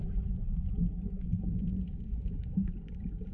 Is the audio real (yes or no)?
yes